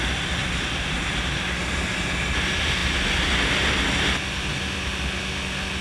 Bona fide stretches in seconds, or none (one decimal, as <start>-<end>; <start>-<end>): 0.0-0.4; 1.1-5.8